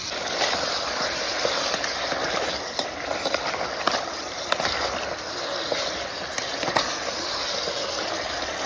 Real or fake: real